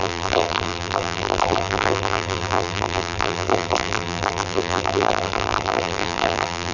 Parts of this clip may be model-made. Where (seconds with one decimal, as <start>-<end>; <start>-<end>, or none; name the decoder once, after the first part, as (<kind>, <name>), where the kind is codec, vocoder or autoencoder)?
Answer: 0.0-6.7 (vocoder, BigVGAN v2)